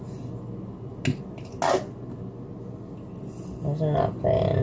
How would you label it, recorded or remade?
recorded